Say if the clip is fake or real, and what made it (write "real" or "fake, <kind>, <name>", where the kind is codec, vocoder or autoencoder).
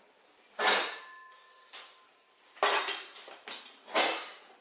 real